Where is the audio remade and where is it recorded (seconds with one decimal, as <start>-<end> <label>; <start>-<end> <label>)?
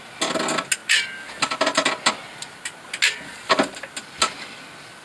0.0-5.0 recorded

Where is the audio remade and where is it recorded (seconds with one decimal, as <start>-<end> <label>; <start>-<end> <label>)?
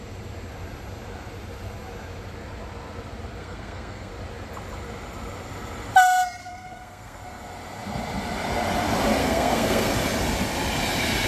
0.0-3.4 recorded; 3.4-4.1 remade; 4.1-6.4 recorded; 6.4-7.2 remade; 7.2-9.2 recorded; 9.2-9.9 remade; 9.9-11.3 recorded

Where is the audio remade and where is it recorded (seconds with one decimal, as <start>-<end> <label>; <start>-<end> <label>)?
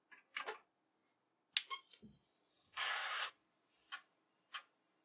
0.0-2.5 recorded; 2.5-3.3 remade; 3.3-5.0 recorded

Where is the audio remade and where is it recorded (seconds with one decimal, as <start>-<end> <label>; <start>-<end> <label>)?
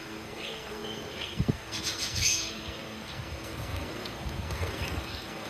0.0-5.5 remade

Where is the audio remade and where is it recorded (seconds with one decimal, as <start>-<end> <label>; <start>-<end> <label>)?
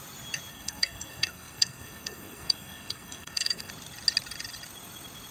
0.0-0.5 recorded; 0.5-3.7 remade; 3.7-5.3 recorded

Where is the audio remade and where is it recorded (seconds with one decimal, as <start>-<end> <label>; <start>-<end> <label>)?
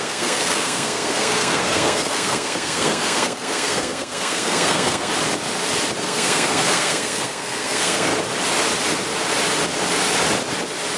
0.0-5.1 remade; 5.1-6.0 recorded; 6.0-8.1 remade; 8.1-11.0 recorded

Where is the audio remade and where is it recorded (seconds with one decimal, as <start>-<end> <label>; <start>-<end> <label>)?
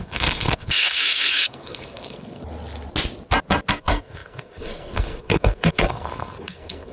0.0-2.4 remade; 2.4-3.7 recorded; 3.7-6.9 remade